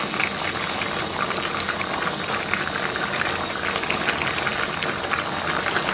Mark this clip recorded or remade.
recorded